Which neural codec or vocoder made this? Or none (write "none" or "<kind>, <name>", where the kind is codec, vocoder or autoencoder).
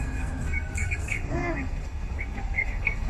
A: codec, SNAC